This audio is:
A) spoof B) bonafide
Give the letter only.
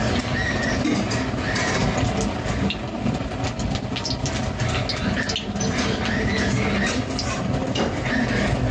B